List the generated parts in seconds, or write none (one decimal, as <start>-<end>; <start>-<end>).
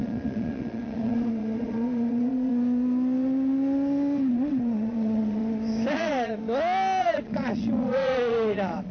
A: 0.0-2.5; 4.3-5.4; 5.9-6.4; 7.0-8.9